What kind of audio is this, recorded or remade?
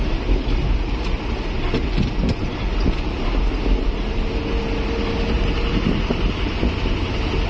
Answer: recorded